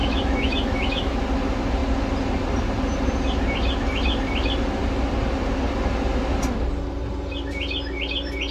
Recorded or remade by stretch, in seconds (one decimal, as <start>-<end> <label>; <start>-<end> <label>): 0.0-1.2 remade; 1.2-8.5 recorded